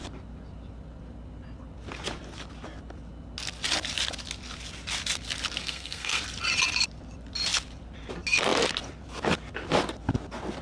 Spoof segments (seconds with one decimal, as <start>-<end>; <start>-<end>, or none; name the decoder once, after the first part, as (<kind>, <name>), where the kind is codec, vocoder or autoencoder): 5.6-6.2 (codec, SNAC)